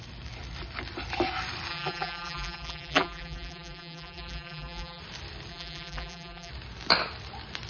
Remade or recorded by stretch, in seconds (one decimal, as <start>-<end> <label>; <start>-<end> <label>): 0.0-1.7 recorded; 1.7-5.0 remade; 5.0-5.5 recorded; 5.5-6.5 remade; 6.5-7.7 recorded